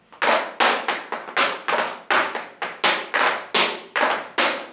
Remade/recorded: recorded